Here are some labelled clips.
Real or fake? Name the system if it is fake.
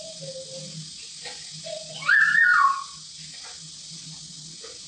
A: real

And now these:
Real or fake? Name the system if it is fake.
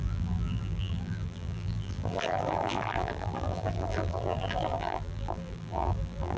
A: fake, vocoder, BigVGAN v2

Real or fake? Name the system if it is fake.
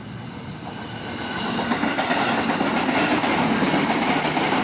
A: real